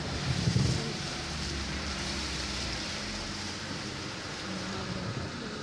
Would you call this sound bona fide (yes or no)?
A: no